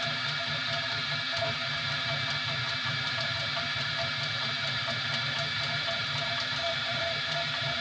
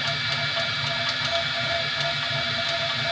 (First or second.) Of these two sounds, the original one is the second